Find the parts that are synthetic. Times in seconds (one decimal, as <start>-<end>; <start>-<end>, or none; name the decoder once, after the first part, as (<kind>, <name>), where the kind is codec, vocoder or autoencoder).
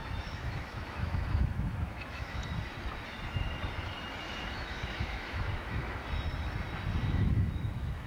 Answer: 0.0-2.4 (autoencoder, DAC-VAE); 4.4-6.0; 7.1-8.1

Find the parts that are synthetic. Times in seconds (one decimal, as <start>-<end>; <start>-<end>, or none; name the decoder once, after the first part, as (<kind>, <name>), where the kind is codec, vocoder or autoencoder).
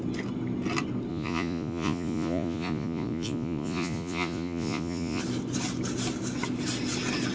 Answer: 1.1-5.2 (vocoder, Vocos)